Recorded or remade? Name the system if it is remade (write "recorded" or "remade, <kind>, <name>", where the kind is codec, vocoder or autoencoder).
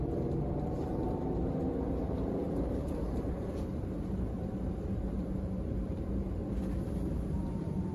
remade, vocoder, BigVGAN v2